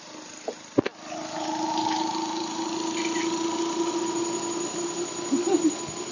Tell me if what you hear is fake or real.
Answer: real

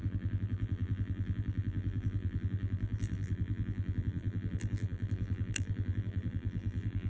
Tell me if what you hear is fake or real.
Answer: fake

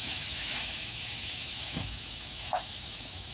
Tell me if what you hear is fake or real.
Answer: fake